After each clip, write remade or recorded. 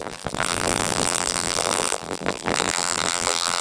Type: remade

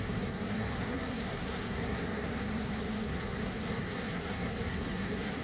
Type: remade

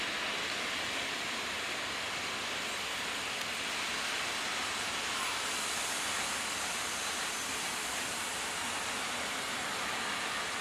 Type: recorded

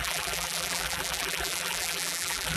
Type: remade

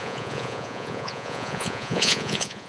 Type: remade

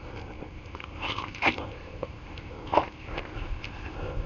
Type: remade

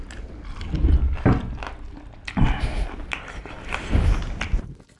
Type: recorded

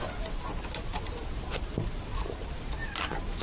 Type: recorded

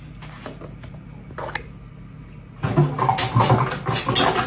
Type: recorded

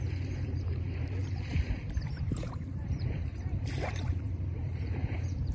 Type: remade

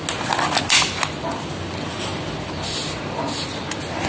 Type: recorded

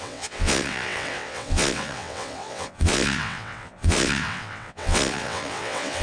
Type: remade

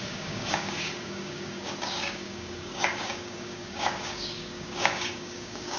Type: remade